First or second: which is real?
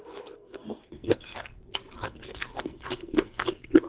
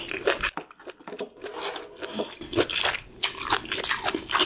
second